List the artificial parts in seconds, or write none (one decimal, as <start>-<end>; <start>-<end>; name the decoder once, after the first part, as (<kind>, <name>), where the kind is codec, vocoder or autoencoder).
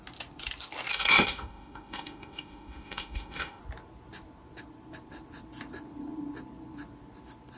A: 0.9-3.6 (autoencoder, DAC-VAE)